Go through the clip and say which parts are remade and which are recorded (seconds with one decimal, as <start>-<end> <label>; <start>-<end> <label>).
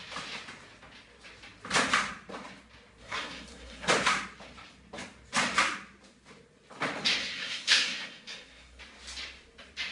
0.0-3.0 recorded; 3.0-3.9 remade; 3.9-7.2 recorded; 7.2-8.8 remade; 8.8-9.9 recorded